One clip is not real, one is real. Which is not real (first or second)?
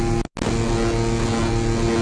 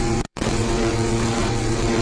second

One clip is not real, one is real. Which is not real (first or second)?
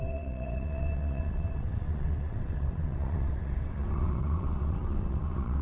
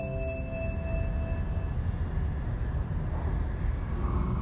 first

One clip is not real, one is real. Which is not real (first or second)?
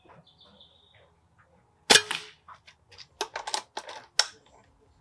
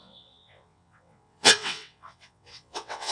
second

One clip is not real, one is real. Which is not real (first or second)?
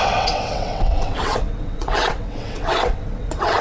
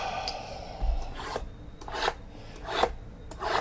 first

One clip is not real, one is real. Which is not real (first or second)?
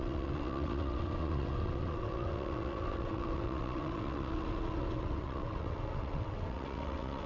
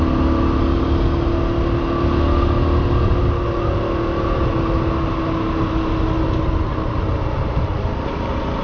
first